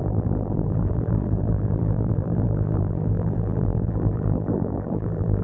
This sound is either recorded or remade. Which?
remade